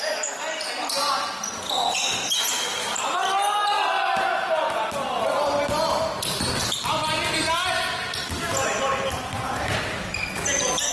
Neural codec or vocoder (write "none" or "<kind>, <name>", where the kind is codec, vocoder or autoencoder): none